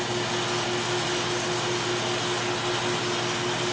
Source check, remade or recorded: recorded